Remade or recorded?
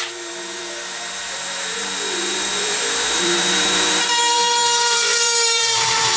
remade